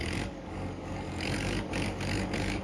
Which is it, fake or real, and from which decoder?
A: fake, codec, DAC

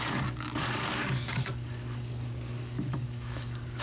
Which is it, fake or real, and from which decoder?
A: fake, codec, DAC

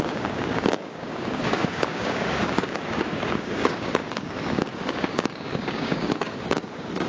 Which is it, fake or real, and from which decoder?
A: fake, codec, DAC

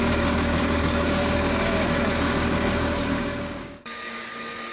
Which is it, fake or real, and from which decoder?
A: fake, codec, DAC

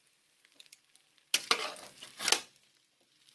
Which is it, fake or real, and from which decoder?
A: real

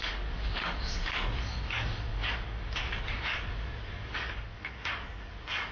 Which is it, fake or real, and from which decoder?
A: fake, codec, DAC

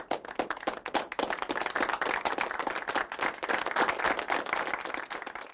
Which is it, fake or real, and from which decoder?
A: real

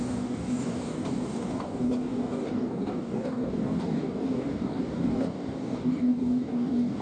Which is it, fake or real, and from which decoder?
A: fake, codec, DAC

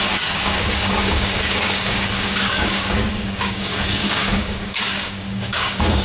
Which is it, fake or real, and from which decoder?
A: fake, codec, DAC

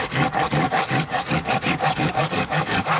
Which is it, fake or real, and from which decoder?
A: fake, codec, DAC